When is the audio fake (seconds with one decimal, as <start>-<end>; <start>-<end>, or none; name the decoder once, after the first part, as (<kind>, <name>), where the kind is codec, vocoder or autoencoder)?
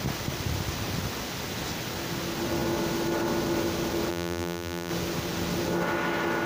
4.1-4.9 (vocoder, BigVGAN v2)